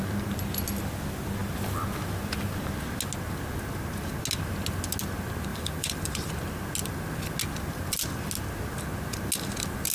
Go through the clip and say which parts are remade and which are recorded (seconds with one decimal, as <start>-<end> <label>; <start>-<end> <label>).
0.0-5.5 recorded; 5.5-6.3 remade; 6.3-9.9 recorded